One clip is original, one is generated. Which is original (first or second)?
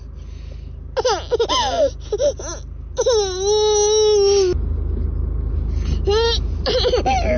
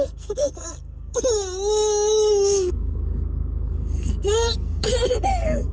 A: first